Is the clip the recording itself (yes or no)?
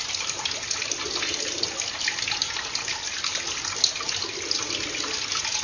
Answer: yes